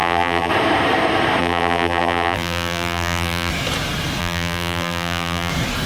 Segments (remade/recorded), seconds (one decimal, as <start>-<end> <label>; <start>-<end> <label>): 0.0-0.5 remade; 0.5-1.4 recorded; 1.4-3.5 remade; 3.5-4.2 recorded; 4.2-5.5 remade; 5.5-5.9 recorded